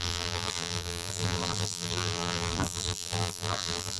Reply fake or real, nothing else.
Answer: fake